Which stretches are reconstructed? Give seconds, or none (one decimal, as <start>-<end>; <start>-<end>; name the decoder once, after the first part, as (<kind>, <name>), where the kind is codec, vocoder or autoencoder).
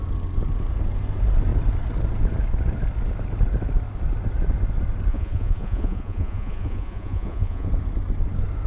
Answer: 5.1-7.7 (vocoder, Vocos)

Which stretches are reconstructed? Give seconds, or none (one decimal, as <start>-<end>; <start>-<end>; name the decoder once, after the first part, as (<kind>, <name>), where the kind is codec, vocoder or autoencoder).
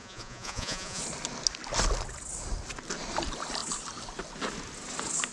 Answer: 0.0-1.0 (vocoder, Vocos)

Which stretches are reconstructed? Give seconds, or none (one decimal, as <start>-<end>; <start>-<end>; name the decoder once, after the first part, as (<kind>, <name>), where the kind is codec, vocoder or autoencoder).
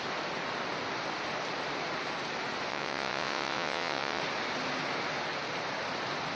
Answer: 2.7-4.2 (vocoder, WaveNeXt)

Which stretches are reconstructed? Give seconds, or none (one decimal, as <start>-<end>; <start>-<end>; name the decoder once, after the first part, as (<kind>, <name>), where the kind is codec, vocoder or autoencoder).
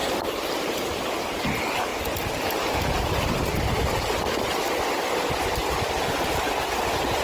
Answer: 0.0-1.9 (vocoder, BigVGAN v2); 5.8-7.2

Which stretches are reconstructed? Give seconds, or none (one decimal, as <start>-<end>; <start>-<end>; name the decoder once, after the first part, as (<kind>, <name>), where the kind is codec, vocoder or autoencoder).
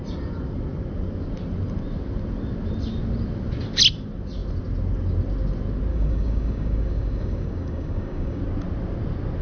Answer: 5.9-8.4 (codec, DAC)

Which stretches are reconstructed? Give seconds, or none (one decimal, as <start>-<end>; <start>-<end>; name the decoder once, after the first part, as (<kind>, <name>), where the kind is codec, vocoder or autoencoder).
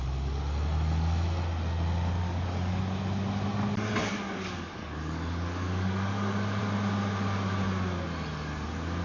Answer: 2.2-2.8 (codec, DAC); 4.0-6.6